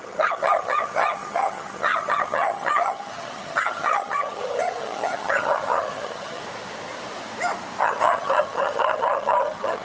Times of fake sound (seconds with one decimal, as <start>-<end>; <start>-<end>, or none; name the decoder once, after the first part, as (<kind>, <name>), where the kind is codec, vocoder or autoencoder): 0.0-6.4 (vocoder, HiFi-GAN); 7.8-9.8